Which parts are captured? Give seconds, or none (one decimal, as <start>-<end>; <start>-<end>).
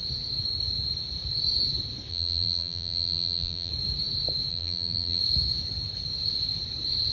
0.0-2.1; 3.7-4.5; 5.2-7.1